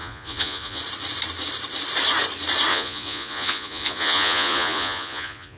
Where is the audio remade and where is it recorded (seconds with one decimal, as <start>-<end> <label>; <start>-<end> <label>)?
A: 0.0-0.8 remade; 0.8-2.7 recorded; 2.7-5.6 remade

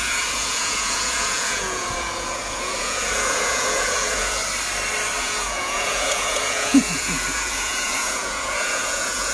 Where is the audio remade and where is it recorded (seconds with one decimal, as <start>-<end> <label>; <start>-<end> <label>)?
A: 0.0-4.4 remade; 4.4-5.2 recorded; 5.2-9.3 remade

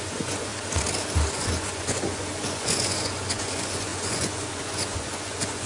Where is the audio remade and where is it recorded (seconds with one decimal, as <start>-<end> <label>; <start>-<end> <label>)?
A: 0.0-0.5 remade; 0.5-1.3 recorded; 1.3-5.7 remade

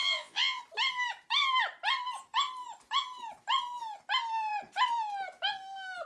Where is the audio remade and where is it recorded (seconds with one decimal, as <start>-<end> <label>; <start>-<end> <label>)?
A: 0.0-0.6 remade; 0.6-6.1 recorded

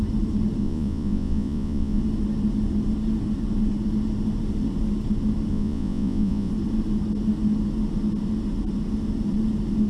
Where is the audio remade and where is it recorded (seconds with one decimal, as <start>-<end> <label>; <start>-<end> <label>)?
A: 0.0-0.6 recorded; 0.6-2.0 remade; 2.0-5.5 recorded; 5.5-6.5 remade; 6.5-9.9 recorded

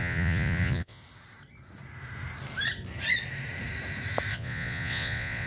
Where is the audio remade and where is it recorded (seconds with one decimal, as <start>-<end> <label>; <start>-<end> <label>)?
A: 0.0-1.0 remade; 1.0-4.3 recorded; 4.3-5.5 remade